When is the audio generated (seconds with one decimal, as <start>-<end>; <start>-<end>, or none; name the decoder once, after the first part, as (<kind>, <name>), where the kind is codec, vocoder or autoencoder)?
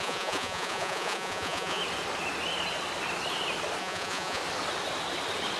0.0-1.8 (vocoder, Vocos); 3.8-4.4